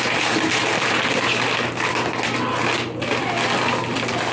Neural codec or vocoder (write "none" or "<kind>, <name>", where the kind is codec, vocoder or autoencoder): none